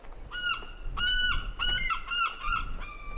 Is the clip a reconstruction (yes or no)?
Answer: no